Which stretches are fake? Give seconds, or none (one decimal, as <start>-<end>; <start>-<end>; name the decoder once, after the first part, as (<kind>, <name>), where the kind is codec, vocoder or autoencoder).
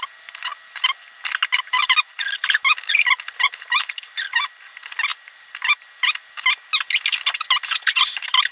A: none